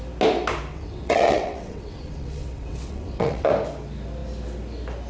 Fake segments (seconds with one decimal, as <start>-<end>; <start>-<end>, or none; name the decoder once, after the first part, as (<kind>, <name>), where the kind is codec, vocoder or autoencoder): 0.7-3.5 (vocoder, WaveNeXt)